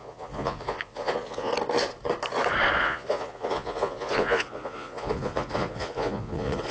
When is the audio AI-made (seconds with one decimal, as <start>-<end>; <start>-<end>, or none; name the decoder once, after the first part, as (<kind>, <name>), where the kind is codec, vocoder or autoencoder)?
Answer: 0.0-1.5 (vocoder, Vocos); 2.8-6.7